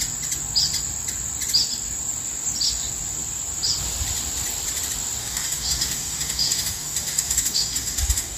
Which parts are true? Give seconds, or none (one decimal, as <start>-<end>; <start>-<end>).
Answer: 0.0-5.2